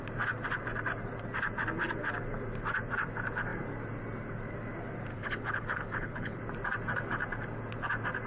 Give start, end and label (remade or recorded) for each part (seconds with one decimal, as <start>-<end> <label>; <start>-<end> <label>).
0.0-5.1 recorded; 5.1-6.4 remade; 6.4-8.3 recorded